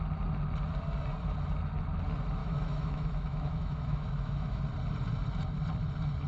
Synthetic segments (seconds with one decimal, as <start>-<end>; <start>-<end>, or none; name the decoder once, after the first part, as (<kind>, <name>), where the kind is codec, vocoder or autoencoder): 2.4-4.6 (autoencoder, DAC-VAE)